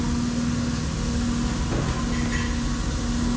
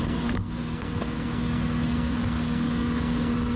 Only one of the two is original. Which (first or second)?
first